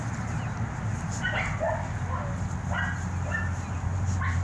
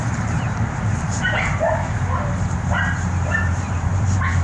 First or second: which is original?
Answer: first